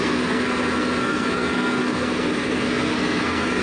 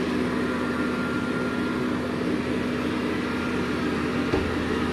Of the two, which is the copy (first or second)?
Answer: first